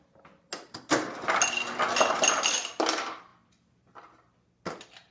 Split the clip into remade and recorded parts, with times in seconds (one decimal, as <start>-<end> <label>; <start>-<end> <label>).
0.0-5.1 recorded